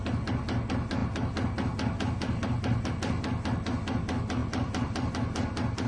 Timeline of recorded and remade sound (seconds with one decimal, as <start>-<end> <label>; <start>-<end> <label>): 0.0-4.4 recorded; 4.4-5.1 remade; 5.1-5.9 recorded